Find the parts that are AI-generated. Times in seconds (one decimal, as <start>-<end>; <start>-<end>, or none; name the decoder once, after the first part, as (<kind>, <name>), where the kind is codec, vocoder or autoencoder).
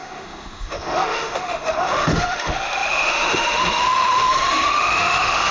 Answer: 0.0-5.5 (autoencoder, DAC-VAE)